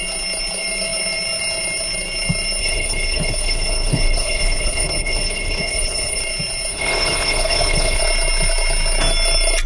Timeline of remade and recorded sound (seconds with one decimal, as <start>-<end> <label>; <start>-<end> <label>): 0.0-2.6 recorded; 2.6-6.2 remade; 6.2-6.7 recorded; 6.7-8.0 remade; 8.0-9.7 recorded